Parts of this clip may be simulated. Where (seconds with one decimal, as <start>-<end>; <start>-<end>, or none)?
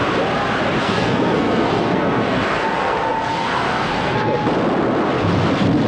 0.8-4.4